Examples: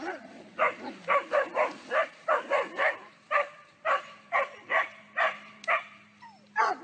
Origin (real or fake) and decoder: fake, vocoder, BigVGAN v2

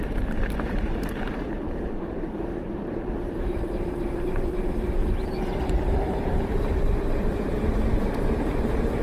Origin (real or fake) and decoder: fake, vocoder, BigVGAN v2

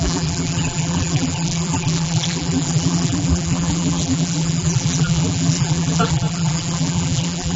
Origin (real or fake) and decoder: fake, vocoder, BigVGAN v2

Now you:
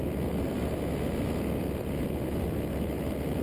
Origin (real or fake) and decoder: real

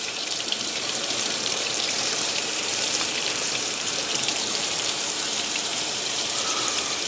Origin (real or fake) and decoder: fake, vocoder, BigVGAN v2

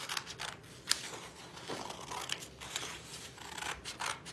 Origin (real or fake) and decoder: real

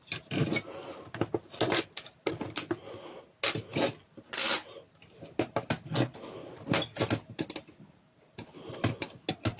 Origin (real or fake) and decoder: real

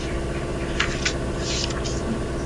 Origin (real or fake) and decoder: fake, vocoder, BigVGAN v2